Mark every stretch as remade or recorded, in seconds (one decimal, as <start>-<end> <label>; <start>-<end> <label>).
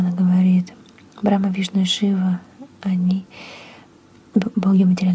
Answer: 0.0-5.1 recorded